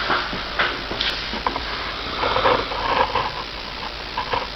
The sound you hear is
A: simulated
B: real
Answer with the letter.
B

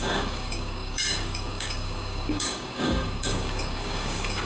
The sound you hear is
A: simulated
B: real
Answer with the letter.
A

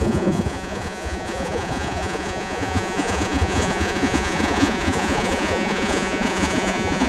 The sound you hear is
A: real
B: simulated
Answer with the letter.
B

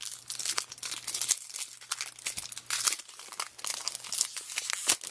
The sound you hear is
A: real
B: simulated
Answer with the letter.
A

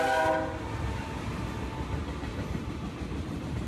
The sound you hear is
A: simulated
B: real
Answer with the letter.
B